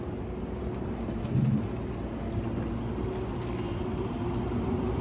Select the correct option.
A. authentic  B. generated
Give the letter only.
A